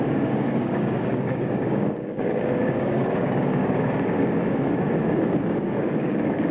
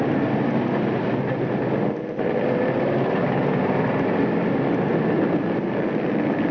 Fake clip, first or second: first